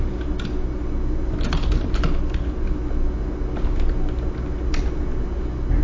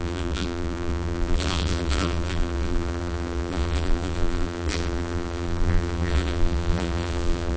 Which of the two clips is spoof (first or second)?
second